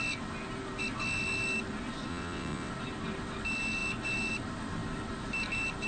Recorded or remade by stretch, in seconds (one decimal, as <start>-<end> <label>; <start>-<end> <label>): 0.0-2.1 recorded; 2.1-2.7 remade; 2.7-5.9 recorded